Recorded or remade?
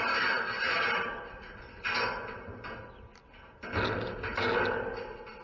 recorded